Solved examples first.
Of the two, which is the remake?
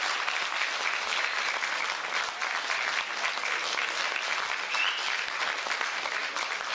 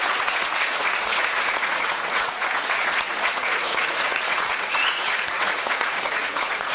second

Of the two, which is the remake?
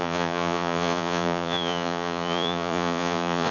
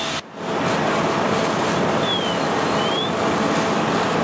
first